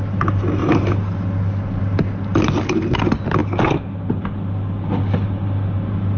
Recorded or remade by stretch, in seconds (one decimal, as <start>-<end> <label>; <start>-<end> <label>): 0.0-6.2 recorded